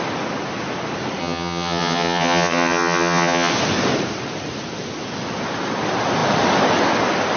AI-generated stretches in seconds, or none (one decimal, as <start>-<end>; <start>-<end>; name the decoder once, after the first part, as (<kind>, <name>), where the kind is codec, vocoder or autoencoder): 1.2-3.5 (vocoder, HiFi-GAN)